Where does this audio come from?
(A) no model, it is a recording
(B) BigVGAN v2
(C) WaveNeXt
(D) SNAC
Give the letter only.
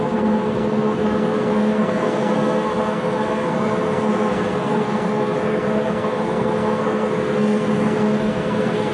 D